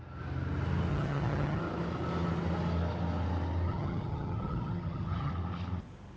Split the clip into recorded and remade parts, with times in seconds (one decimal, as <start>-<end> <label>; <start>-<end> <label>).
0.0-0.9 recorded; 0.9-1.6 remade; 1.6-3.7 recorded; 3.7-5.3 remade; 5.3-6.2 recorded